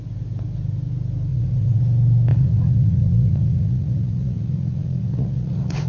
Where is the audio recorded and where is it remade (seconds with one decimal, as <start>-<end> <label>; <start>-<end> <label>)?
0.0-1.3 recorded; 1.3-1.8 remade; 1.8-2.3 recorded; 2.3-5.9 remade